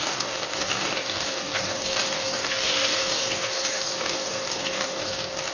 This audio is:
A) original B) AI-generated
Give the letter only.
B